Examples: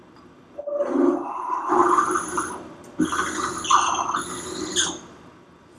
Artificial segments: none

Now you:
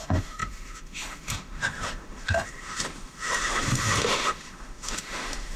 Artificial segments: 0.0-5.6 (autoencoder, DAC-VAE)

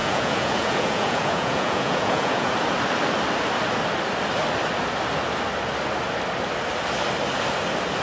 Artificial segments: 0.0-2.5 (vocoder, Vocos)